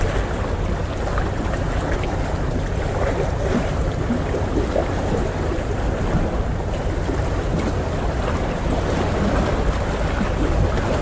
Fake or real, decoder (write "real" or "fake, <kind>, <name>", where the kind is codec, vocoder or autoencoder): real